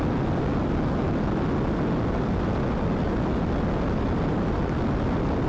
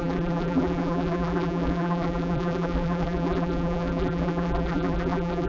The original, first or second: first